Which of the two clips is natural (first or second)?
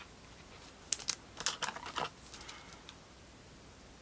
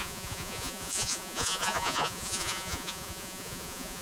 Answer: first